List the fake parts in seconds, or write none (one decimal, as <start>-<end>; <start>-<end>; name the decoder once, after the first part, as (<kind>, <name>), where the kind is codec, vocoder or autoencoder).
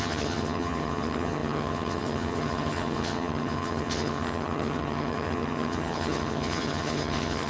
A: 0.0-7.5 (vocoder, HiFi-GAN)